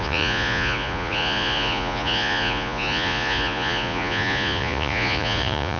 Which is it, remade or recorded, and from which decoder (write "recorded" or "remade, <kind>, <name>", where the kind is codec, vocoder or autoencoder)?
remade, vocoder, Vocos